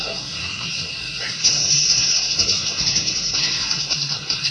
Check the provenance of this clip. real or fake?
fake